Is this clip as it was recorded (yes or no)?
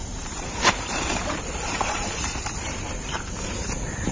no